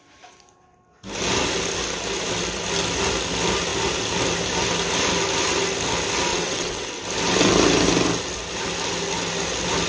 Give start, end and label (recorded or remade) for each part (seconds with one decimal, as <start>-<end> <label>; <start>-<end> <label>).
0.0-6.3 recorded; 6.3-6.9 remade; 6.9-9.9 recorded

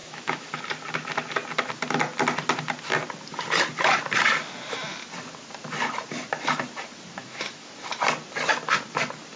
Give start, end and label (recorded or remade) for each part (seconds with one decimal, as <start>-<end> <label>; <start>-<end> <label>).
0.0-0.6 remade; 0.6-7.2 recorded; 7.2-7.7 remade; 7.7-9.4 recorded

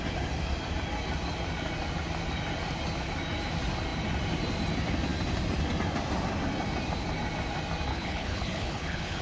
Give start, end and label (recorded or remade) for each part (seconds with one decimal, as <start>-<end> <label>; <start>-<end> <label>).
0.0-7.9 recorded; 7.9-9.2 remade

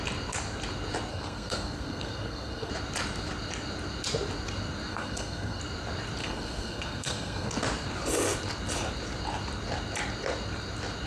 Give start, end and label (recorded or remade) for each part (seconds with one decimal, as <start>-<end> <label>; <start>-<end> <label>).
0.0-1.1 recorded; 1.1-2.7 remade; 2.7-4.9 recorded; 4.9-5.6 remade; 5.6-6.2 recorded; 6.2-7.5 remade; 7.5-11.1 recorded

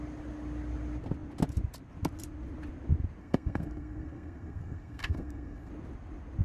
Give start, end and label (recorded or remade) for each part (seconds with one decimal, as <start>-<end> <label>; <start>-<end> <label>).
0.0-3.2 recorded; 3.2-5.7 remade; 5.7-6.4 recorded

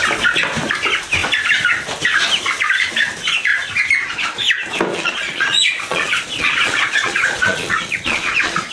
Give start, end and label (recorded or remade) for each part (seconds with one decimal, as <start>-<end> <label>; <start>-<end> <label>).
0.0-4.9 recorded; 4.9-8.7 remade